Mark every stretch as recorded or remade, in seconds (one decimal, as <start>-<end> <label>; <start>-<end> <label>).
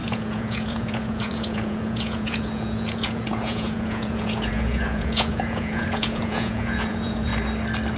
0.0-7.3 remade; 7.3-8.0 recorded